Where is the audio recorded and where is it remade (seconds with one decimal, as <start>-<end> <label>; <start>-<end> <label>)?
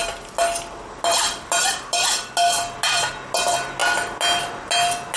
0.0-5.2 recorded